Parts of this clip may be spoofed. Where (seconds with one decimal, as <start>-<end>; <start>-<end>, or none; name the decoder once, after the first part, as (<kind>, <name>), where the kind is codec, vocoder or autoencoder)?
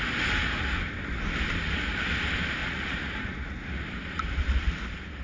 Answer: 2.6-3.8 (vocoder, Vocos)